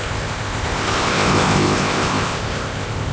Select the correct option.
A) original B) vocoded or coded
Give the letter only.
B